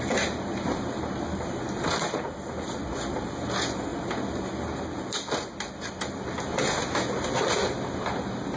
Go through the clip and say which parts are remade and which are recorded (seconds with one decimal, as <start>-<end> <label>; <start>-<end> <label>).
0.0-8.6 recorded